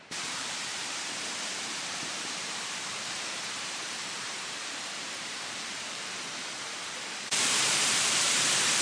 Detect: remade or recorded remade